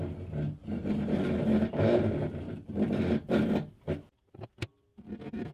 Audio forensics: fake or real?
real